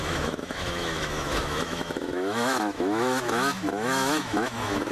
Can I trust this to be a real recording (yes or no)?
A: no